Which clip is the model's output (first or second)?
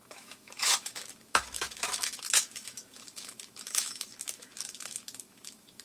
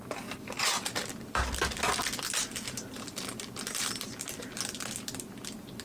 first